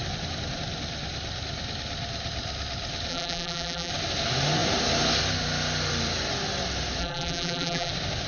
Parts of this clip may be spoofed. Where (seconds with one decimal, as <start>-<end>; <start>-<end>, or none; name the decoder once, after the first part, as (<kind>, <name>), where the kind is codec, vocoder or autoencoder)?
3.1-3.9 (vocoder, BigVGAN v2); 7.0-7.9